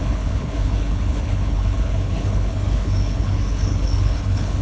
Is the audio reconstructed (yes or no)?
yes